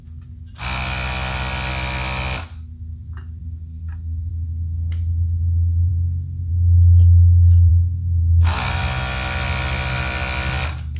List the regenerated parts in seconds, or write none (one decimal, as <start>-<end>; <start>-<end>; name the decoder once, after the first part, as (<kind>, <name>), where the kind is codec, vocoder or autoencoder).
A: 3.4-4.3 (codec, SNAC)

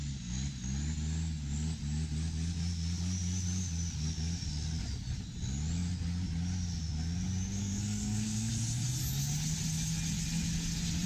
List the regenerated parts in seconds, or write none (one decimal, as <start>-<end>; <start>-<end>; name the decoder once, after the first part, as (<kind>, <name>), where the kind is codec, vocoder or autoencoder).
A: 7.6-8.5 (codec, SNAC)

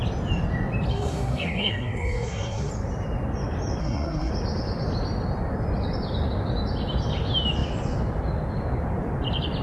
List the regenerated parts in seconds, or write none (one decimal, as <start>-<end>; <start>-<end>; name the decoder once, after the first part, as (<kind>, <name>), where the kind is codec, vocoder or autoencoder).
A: 0.9-2.7 (codec, SNAC); 3.8-4.3

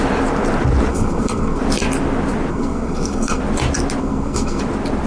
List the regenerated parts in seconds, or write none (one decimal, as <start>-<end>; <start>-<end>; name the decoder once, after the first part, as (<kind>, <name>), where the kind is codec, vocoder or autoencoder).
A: 0.9-1.6 (codec, SNAC); 2.5-3.4; 4.0-4.6

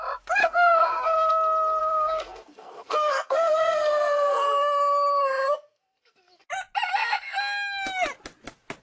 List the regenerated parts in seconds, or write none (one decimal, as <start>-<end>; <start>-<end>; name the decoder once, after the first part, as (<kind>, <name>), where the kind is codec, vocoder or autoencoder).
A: 0.4-1.3 (codec, SNAC); 1.8-6.5

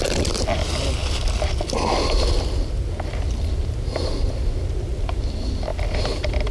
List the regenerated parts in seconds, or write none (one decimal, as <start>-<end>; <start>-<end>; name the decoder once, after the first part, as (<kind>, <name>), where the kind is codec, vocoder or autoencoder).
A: none

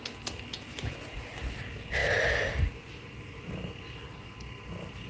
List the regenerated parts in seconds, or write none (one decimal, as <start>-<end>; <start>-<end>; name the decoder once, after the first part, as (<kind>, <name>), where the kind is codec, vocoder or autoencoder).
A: none